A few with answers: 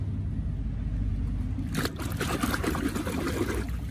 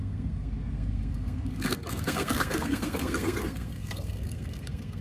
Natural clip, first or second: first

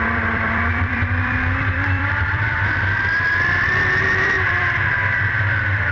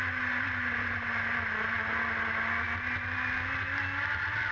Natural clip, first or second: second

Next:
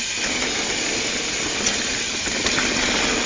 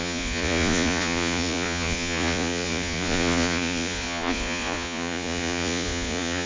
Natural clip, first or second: first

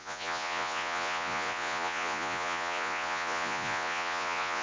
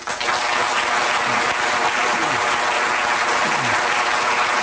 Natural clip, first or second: second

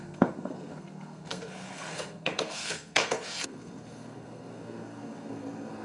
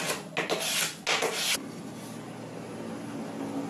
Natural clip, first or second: second